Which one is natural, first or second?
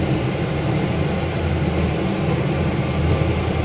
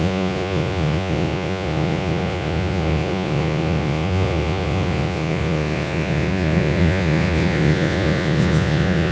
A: first